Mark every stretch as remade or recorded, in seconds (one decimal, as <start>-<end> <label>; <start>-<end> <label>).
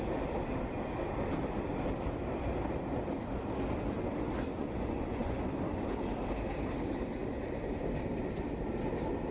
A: 0.0-4.5 recorded; 4.5-5.5 remade; 5.5-9.3 recorded